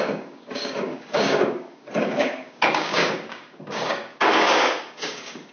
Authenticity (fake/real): fake